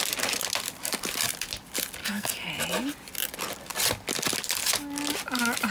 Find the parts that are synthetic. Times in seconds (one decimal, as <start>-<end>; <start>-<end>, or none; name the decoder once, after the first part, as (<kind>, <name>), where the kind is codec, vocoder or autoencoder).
2.0-2.5 (codec, SNAC)